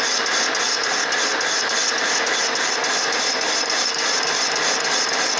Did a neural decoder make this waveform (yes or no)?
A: no